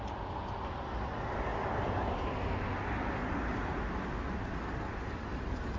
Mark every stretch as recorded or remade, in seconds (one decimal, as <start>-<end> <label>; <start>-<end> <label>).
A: 0.0-5.8 recorded